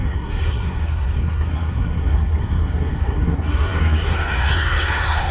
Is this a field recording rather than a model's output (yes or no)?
no